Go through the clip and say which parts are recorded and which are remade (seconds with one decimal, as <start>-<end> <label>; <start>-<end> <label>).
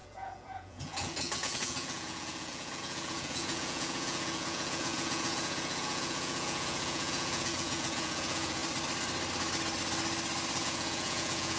0.0-8.6 remade; 8.6-10.6 recorded; 10.6-11.6 remade